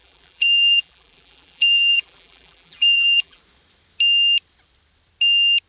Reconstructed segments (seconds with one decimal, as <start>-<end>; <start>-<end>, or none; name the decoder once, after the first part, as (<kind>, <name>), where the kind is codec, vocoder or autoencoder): 0.0-3.4 (vocoder, BigVGAN v2)